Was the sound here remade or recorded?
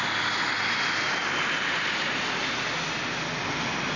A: recorded